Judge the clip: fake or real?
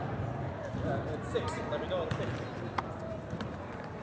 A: real